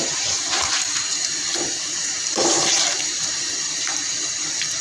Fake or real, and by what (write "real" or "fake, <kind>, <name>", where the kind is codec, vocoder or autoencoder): fake, vocoder, BigVGAN v2